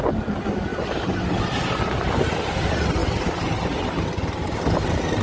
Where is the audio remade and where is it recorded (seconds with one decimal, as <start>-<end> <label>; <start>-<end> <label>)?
0.0-5.2 recorded